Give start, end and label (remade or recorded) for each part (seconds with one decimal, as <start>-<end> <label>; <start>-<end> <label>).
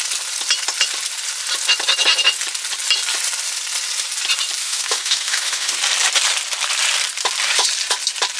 0.0-4.6 recorded; 4.6-5.8 remade; 5.8-8.4 recorded